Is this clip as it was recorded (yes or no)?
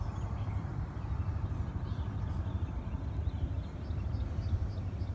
yes